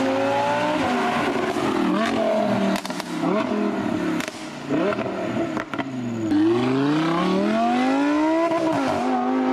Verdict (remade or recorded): recorded